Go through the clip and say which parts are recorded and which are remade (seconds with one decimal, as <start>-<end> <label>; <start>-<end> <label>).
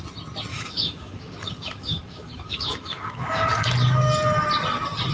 0.0-0.5 recorded; 0.5-3.6 remade; 3.6-5.1 recorded